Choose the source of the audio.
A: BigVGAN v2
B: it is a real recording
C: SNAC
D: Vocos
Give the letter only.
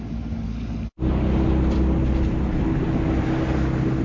B